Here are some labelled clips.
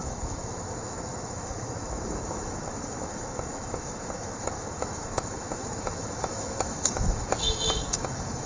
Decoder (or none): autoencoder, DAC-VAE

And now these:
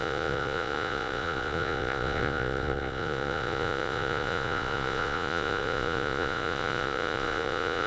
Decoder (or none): vocoder, Vocos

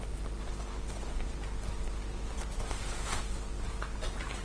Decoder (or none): none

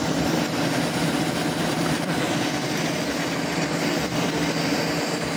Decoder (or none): none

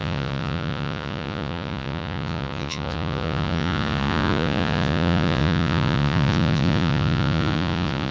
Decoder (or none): vocoder, Vocos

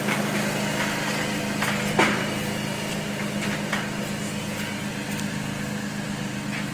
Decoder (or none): none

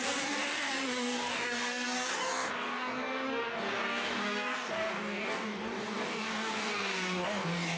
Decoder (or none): codec, DAC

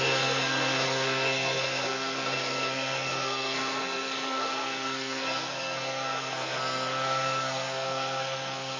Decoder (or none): codec, SNAC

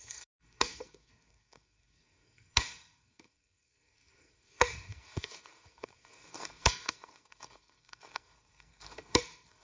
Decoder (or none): codec, SNAC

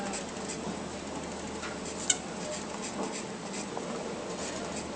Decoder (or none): none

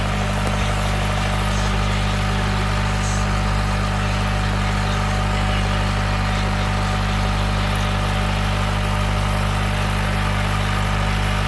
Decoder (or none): none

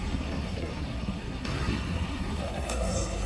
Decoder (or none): codec, SNAC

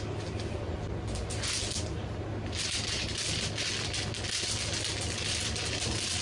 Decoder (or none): none